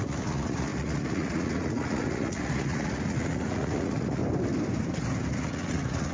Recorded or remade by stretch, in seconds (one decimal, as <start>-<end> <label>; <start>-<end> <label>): 0.0-4.2 remade; 4.2-5.3 recorded; 5.3-6.1 remade